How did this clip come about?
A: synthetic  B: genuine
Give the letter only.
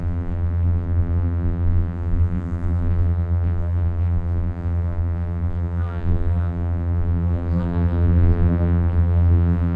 A